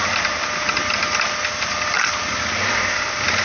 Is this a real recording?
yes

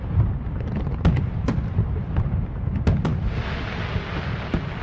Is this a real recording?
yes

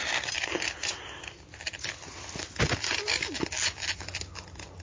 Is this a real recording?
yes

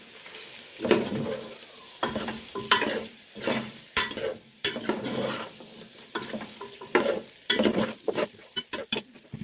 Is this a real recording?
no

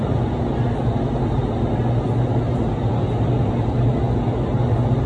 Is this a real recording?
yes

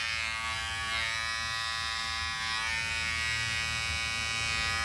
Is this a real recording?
yes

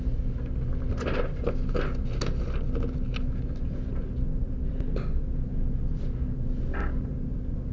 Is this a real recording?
yes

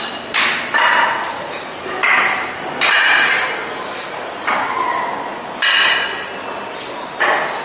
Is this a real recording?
yes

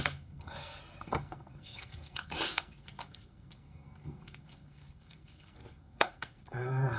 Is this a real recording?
no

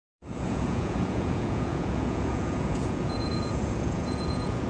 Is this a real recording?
no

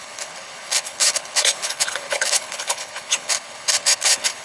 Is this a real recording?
no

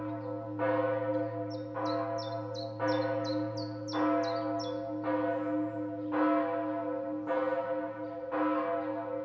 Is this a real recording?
yes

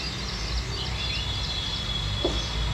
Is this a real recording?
yes